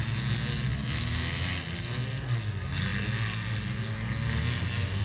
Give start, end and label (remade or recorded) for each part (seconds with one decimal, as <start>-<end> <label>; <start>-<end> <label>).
0.0-5.0 recorded